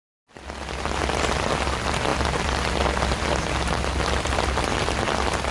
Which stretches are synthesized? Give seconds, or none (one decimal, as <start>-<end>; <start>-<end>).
none